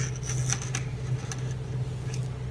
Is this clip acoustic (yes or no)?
yes